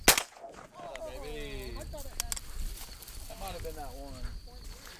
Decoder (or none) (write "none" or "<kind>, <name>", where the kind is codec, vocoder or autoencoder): none